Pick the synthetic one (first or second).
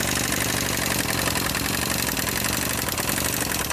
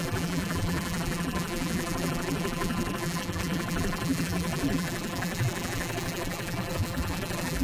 second